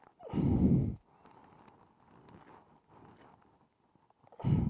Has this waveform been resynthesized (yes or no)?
no